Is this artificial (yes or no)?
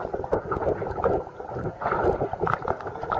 no